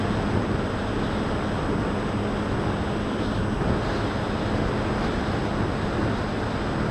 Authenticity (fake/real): real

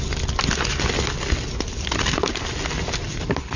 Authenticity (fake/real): real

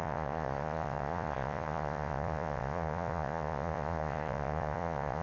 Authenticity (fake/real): fake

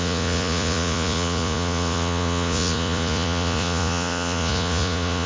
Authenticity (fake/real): fake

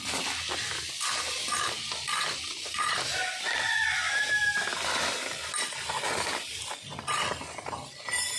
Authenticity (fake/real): real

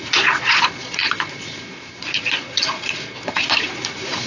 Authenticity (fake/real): fake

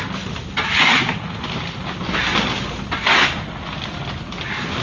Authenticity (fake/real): real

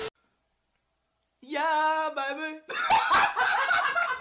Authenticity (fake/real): real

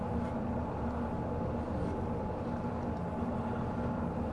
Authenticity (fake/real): real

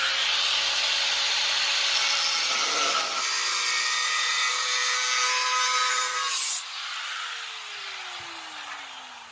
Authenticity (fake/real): real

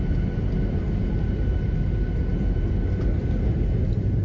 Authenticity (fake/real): real